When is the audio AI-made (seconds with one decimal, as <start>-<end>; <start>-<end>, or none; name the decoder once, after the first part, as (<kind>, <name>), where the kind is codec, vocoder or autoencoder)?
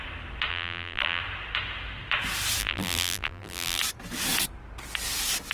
0.5-1.2 (vocoder, BigVGAN v2); 2.6-3.8